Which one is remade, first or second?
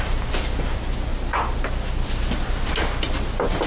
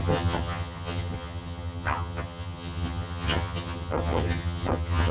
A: second